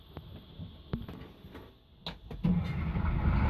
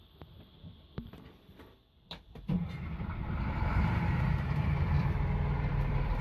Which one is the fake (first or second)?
second